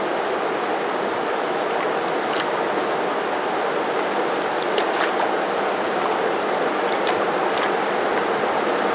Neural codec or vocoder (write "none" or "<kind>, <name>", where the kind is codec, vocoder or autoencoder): none